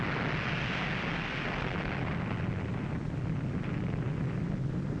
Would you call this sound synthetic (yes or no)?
no